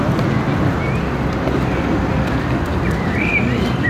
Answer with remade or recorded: recorded